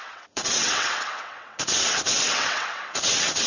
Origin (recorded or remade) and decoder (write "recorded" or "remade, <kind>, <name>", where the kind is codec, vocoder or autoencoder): remade, vocoder, WaveNeXt